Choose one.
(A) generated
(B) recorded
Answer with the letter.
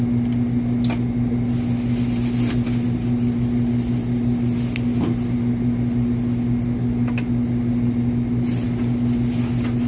B